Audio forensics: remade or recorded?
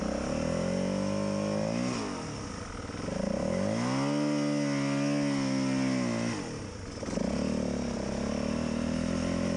recorded